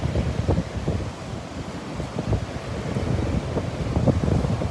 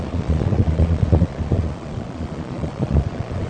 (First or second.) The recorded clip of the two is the first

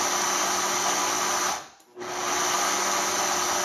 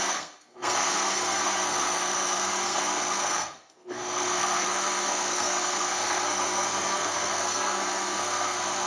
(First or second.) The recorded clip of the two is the first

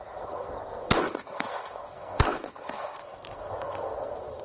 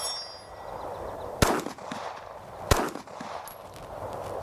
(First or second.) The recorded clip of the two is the second